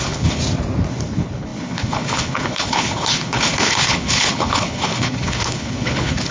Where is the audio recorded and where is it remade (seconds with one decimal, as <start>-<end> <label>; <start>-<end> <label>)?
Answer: 0.0-0.4 remade; 0.4-0.9 recorded; 0.9-6.3 remade